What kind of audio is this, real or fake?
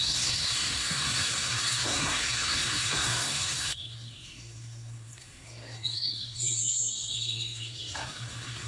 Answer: fake